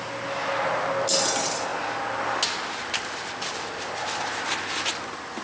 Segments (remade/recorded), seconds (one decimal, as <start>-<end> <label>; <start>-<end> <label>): 0.0-5.4 recorded